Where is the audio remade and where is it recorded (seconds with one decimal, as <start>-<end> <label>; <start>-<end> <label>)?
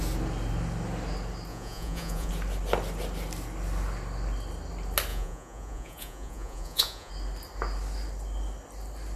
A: 0.0-1.5 recorded; 1.5-2.3 remade; 2.3-5.1 recorded; 5.1-7.1 remade; 7.1-9.2 recorded